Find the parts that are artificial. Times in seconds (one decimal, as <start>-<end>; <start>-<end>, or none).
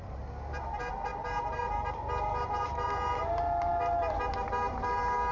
1.1-3.2